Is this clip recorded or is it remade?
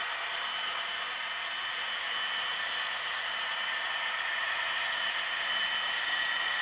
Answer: recorded